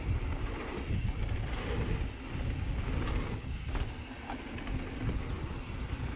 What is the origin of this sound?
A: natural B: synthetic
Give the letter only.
A